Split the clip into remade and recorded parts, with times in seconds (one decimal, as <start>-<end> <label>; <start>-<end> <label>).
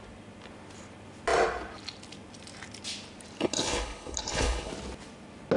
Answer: 0.0-3.4 recorded; 3.4-4.7 remade; 4.7-5.6 recorded